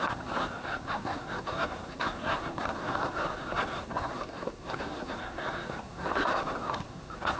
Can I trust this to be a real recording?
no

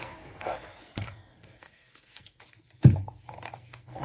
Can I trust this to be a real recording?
no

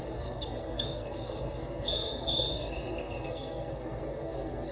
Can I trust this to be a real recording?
no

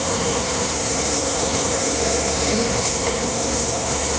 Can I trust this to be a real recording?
no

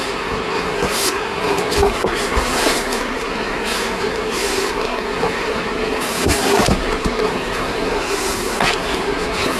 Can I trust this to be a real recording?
no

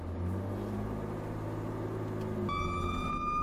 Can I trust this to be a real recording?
yes